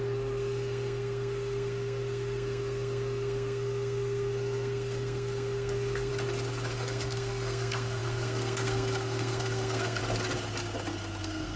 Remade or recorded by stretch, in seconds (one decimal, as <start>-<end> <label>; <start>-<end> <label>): 0.0-6.1 remade; 6.1-6.7 recorded; 6.7-10.0 remade; 10.0-11.2 recorded; 11.2-11.6 remade